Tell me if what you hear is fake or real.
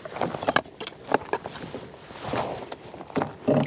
real